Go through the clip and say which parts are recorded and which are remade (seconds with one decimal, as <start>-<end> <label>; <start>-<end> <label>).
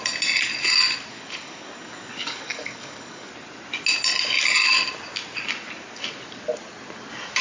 0.0-1.1 recorded; 1.1-3.3 remade; 3.3-7.4 recorded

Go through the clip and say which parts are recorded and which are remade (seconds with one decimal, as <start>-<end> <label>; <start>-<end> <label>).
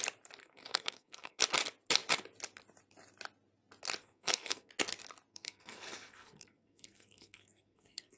0.0-0.4 recorded; 0.4-1.4 remade; 1.4-4.0 recorded; 4.0-4.7 remade; 4.7-5.3 recorded; 5.3-8.2 remade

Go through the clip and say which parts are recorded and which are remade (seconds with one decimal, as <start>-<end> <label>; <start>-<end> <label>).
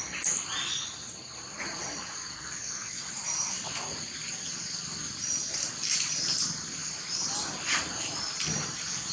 0.0-2.3 recorded; 2.3-3.1 remade; 3.1-9.1 recorded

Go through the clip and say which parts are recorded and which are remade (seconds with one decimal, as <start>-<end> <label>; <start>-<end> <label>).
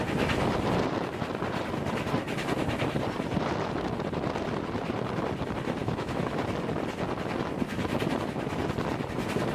0.0-5.8 recorded; 5.8-6.4 remade; 6.4-9.5 recorded